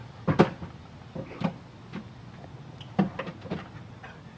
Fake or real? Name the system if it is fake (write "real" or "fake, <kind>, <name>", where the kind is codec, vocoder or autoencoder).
real